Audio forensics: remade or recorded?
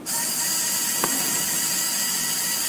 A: recorded